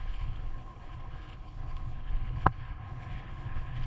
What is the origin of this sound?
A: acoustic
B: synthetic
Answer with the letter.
B